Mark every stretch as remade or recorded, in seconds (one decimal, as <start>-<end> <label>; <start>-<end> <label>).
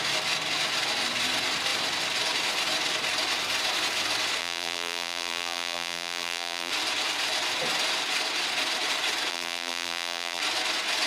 0.0-4.4 recorded; 4.4-6.7 remade; 6.7-9.3 recorded; 9.3-10.4 remade; 10.4-11.1 recorded